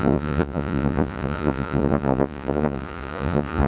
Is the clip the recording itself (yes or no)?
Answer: no